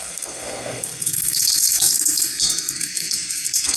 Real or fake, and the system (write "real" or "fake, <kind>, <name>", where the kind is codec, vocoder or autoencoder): fake, codec, SNAC